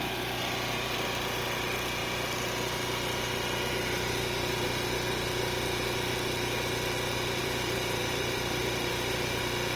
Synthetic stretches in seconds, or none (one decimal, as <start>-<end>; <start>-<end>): 7.4-9.4